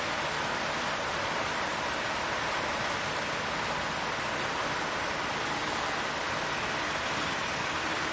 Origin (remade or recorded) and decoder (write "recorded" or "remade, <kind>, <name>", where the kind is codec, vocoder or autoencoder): recorded